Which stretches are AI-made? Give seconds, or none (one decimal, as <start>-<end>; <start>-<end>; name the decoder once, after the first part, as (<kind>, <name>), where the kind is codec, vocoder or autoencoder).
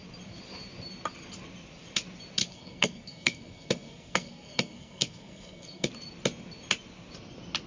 2.4-5.9 (codec, SNAC)